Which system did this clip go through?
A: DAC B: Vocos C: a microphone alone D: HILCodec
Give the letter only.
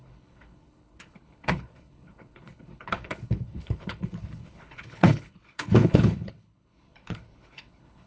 D